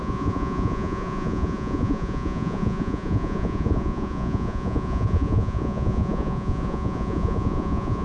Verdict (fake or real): fake